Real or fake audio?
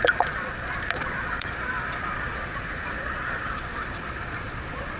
fake